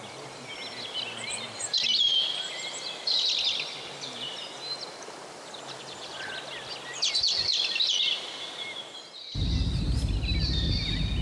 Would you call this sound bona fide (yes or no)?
yes